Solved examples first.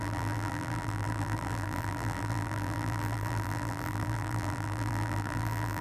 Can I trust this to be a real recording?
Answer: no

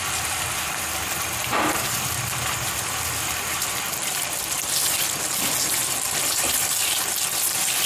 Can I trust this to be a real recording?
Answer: no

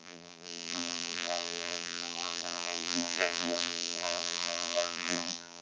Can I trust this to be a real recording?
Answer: no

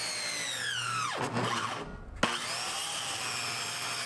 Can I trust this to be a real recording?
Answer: yes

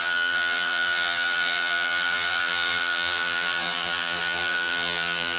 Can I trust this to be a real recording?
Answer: no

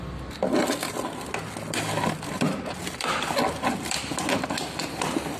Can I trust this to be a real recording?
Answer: yes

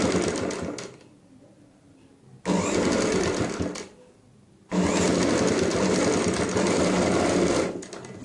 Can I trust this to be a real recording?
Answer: yes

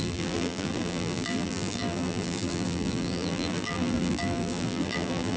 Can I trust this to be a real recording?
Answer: no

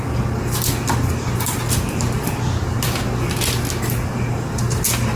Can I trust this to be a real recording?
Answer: yes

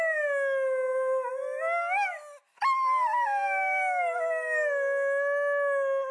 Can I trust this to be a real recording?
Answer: yes